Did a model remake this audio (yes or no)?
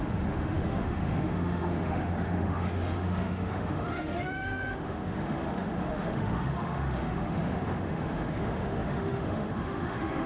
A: yes